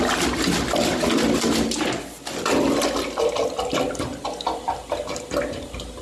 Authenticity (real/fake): real